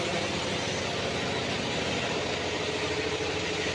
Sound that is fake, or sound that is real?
real